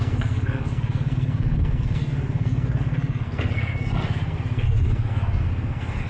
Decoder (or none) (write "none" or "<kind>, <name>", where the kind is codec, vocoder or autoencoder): codec, SNAC